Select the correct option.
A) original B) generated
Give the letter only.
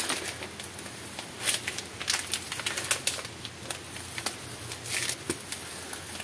A